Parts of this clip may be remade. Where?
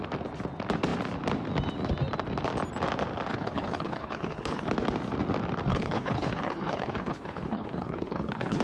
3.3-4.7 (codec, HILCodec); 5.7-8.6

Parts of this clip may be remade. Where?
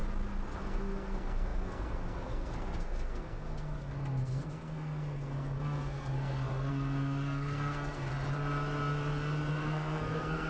0.6-8.1 (codec, SNAC); 9.5-10.5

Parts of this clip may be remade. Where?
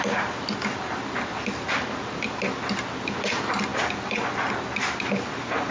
none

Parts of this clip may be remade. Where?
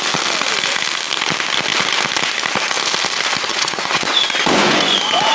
3.5-5.3 (vocoder, Vocos)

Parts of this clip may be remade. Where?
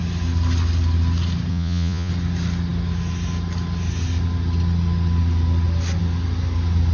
1.5-2.1 (vocoder, Vocos)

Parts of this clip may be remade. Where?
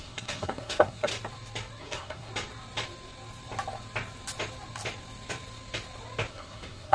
0.0-1.1 (codec, SNAC); 1.8-2.3; 6.3-6.9